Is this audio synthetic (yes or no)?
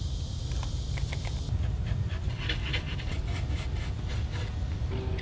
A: no